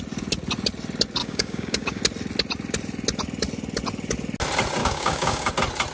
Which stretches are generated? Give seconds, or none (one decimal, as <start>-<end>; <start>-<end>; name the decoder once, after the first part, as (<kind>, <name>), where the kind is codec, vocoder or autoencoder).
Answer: 1.2-2.0 (codec, DAC); 4.8-5.5